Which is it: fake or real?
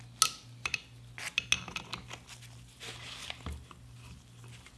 real